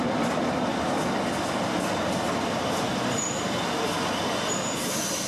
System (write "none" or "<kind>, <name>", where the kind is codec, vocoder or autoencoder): vocoder, BigVGAN v2